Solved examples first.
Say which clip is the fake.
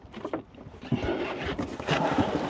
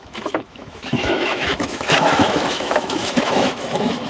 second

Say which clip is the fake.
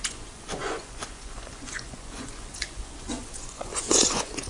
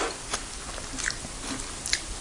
first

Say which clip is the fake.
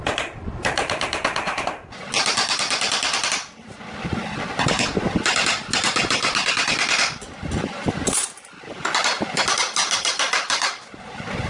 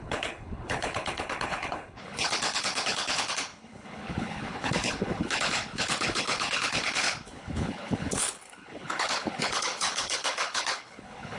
second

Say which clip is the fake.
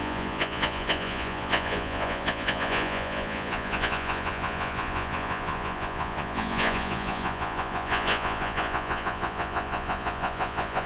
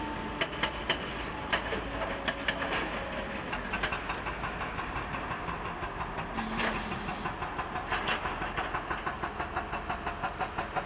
first